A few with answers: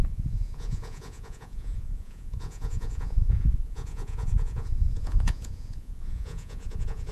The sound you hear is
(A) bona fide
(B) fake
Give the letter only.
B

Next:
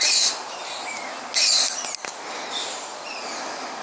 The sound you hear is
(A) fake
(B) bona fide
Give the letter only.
B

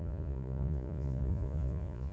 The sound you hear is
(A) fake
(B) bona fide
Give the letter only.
A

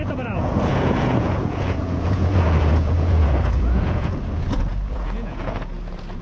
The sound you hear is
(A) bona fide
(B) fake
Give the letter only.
B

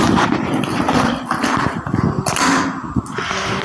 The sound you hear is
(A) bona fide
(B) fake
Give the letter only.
A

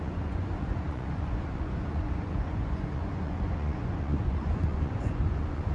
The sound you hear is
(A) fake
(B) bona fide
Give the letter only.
A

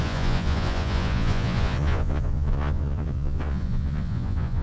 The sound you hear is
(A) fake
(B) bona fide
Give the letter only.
A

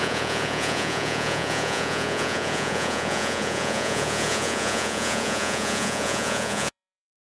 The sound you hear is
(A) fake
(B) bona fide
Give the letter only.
A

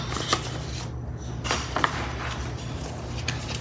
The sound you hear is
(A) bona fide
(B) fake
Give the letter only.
A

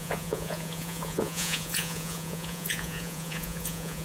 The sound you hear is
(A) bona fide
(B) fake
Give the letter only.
B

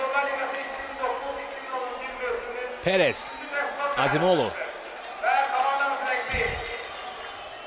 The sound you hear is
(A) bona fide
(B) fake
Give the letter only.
A